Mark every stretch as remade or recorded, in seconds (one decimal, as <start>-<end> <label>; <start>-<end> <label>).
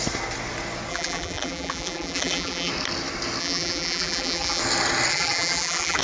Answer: 0.0-0.9 recorded; 0.9-2.7 remade; 2.7-3.4 recorded; 3.4-4.6 remade; 4.6-5.1 recorded; 5.1-6.0 remade